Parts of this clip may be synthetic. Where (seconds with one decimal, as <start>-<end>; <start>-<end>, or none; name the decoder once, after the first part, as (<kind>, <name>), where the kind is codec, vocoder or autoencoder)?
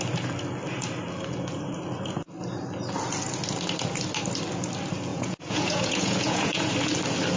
5.1-6.7 (vocoder, Vocos)